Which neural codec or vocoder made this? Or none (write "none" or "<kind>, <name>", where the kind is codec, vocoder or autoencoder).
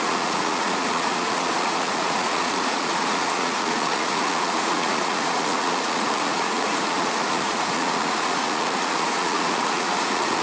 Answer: vocoder, Vocos